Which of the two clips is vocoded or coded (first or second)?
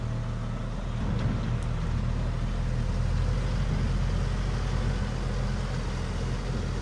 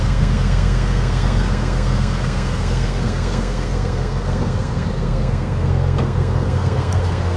second